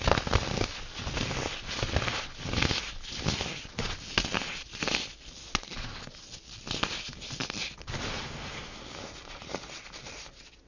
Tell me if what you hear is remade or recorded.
recorded